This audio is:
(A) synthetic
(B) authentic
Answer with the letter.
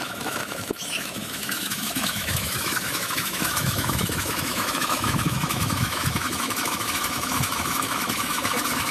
A